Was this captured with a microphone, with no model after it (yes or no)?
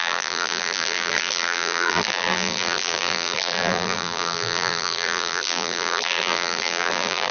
no